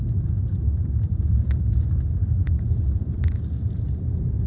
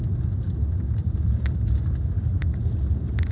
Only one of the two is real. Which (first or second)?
second